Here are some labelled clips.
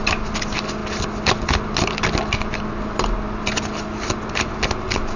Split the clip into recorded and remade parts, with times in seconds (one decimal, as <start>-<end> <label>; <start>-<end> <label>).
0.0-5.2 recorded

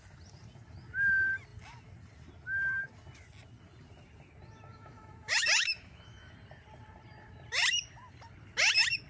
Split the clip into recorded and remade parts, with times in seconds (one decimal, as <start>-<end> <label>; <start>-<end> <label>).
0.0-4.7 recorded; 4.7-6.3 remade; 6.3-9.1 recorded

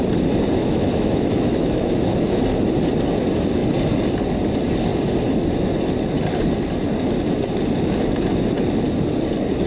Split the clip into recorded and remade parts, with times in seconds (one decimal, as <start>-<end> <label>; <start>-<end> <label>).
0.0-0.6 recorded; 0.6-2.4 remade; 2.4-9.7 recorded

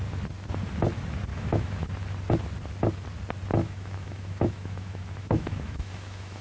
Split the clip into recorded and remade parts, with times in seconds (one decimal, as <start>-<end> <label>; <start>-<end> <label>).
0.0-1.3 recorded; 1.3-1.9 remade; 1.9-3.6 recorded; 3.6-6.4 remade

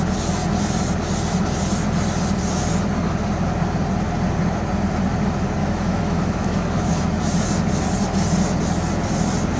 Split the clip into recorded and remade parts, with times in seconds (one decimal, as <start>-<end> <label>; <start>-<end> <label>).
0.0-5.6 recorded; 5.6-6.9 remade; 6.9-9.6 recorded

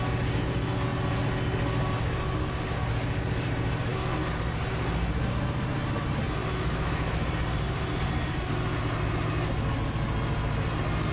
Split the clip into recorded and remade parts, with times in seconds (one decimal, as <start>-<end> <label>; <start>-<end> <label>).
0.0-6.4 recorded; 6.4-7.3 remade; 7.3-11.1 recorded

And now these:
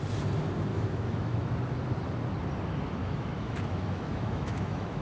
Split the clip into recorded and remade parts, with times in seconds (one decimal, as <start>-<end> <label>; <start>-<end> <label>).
0.0-0.7 recorded; 0.7-1.5 remade; 1.5-3.0 recorded; 3.0-5.0 remade

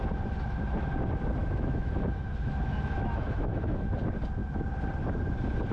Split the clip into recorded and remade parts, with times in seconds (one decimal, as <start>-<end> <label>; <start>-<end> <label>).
0.0-1.4 recorded; 1.4-3.9 remade; 3.9-5.7 recorded